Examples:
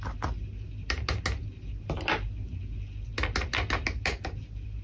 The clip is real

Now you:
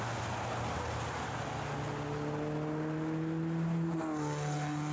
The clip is real